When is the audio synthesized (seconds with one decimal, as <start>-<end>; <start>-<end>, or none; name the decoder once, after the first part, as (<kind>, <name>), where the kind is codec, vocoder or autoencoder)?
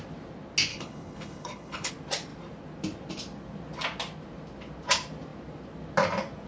0.7-1.9 (codec, HILCodec)